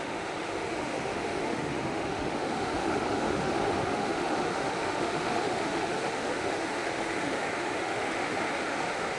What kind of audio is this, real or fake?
fake